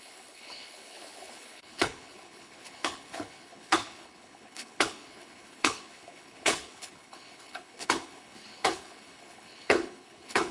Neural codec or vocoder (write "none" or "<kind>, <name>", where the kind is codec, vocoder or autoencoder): codec, HILCodec